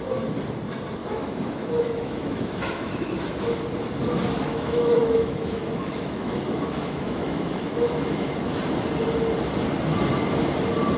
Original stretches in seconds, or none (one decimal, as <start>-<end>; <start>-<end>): 0.0-1.0; 3.2-4.4; 8.6-11.0